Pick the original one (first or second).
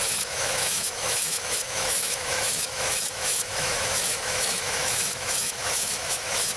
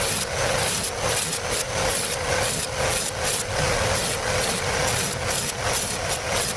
second